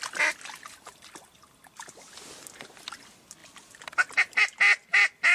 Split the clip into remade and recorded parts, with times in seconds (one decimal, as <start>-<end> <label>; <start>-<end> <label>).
0.0-5.3 recorded